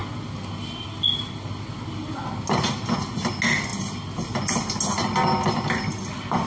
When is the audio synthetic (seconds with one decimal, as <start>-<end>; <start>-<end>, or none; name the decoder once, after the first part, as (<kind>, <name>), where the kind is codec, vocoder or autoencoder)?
none

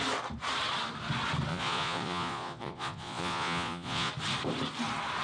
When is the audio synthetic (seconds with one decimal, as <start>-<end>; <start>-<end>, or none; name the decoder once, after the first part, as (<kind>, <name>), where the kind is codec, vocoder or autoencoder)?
1.5-4.1 (vocoder, Vocos)

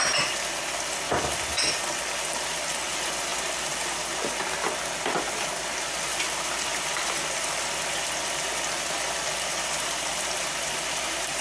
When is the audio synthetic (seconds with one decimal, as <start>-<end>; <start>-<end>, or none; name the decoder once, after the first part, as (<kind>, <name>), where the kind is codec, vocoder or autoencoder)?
none

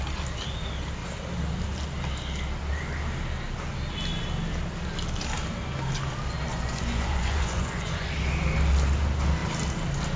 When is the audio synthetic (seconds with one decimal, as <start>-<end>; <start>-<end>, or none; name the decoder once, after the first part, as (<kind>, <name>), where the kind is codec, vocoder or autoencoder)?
6.5-8.1 (vocoder, Vocos)

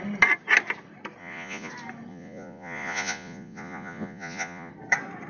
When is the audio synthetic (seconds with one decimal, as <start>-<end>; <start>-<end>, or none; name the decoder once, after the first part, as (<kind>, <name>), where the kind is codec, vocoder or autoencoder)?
1.2-1.7 (vocoder, Vocos); 2.1-4.7

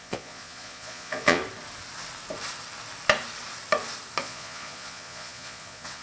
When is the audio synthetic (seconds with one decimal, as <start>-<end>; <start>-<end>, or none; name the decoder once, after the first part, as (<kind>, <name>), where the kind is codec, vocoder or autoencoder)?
0.0-1.4 (vocoder, Vocos); 4.2-6.0

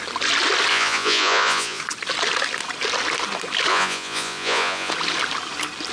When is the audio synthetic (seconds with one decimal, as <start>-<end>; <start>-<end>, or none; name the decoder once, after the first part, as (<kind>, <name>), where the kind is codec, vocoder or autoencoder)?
0.7-1.8 (vocoder, Vocos); 3.7-4.9

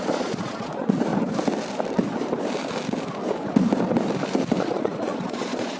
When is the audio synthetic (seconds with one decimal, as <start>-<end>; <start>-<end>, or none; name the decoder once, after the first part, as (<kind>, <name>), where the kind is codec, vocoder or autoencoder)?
0.0-1.1 (vocoder, Vocos); 4.6-5.8